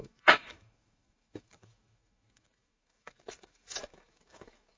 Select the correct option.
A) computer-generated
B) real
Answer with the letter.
A